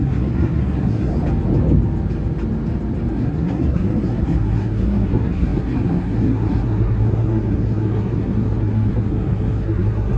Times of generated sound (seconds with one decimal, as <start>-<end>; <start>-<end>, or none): 0.0-1.1; 3.1-10.2